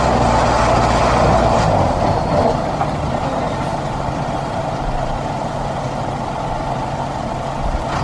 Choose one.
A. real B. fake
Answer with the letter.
A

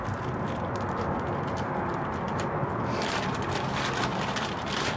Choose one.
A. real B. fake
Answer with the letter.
A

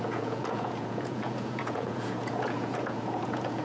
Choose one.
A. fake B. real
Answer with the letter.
A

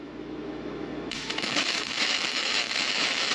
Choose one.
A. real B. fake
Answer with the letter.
B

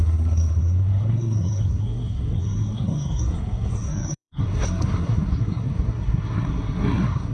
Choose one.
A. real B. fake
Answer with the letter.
B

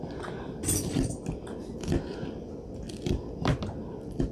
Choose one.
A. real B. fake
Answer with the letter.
A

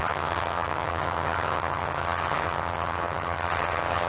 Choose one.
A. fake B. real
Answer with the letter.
A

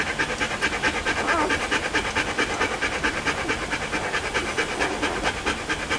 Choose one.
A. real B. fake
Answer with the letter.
A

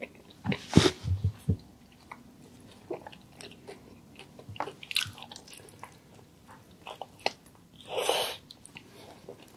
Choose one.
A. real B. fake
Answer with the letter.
A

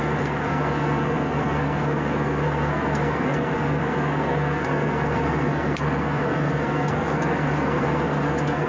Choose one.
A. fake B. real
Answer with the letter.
A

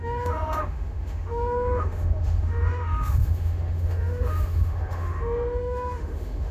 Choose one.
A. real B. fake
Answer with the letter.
B